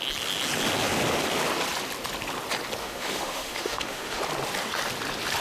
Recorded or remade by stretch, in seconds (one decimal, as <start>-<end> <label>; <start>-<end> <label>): 0.0-2.8 recorded; 2.8-4.2 remade; 4.2-5.4 recorded